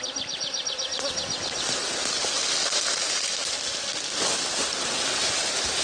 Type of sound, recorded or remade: recorded